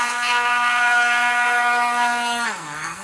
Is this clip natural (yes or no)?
no